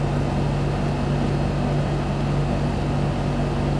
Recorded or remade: recorded